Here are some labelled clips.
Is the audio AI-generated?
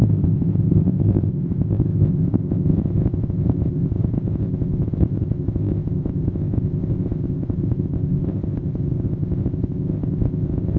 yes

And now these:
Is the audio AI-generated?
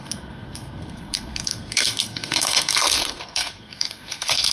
yes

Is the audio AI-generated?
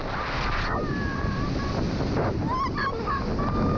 no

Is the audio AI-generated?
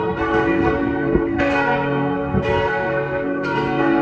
yes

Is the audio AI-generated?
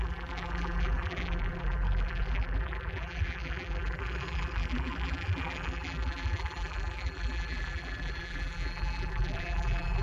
yes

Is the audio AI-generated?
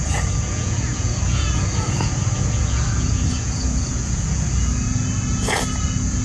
yes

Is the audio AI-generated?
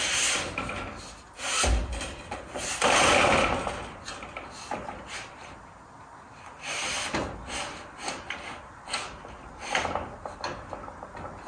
no